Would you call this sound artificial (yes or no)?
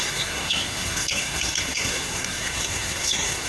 yes